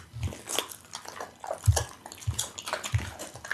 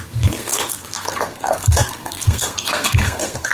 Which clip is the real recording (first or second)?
first